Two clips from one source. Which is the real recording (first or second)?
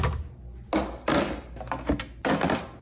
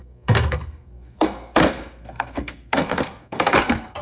first